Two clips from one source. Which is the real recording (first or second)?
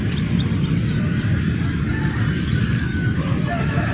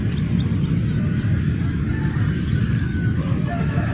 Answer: second